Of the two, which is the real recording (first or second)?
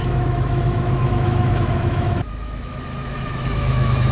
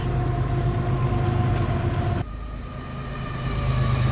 second